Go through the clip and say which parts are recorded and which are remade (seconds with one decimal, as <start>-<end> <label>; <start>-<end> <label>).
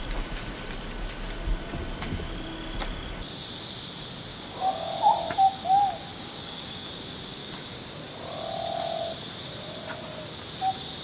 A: 0.0-4.3 recorded; 4.3-5.0 remade; 5.0-6.1 recorded; 6.1-6.9 remade; 6.9-7.4 recorded; 7.4-8.0 remade; 8.0-11.0 recorded